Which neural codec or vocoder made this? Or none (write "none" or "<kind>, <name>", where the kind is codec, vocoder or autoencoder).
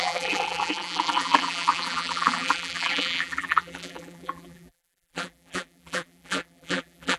vocoder, BigVGAN v2